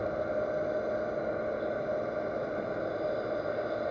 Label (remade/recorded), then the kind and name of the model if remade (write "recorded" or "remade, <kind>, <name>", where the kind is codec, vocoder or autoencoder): recorded